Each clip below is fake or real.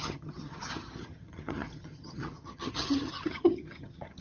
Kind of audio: fake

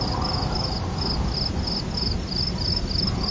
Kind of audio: real